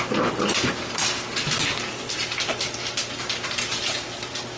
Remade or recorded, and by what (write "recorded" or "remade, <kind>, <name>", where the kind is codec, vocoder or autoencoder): recorded